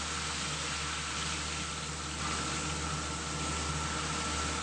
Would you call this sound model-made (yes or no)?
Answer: no